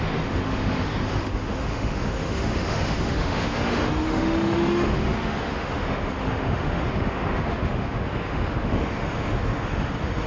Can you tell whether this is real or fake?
fake